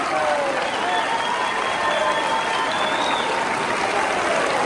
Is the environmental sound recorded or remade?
recorded